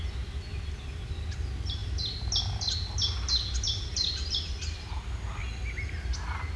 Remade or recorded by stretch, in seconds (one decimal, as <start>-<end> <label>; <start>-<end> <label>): 0.0-6.6 recorded